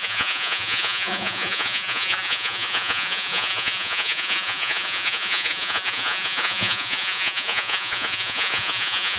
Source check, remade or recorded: remade